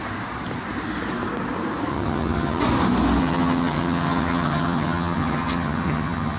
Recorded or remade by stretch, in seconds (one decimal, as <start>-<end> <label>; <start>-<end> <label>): 0.0-1.9 recorded; 1.9-2.6 remade; 2.6-3.2 recorded; 3.2-6.4 remade